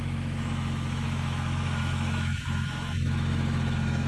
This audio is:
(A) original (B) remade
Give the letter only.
B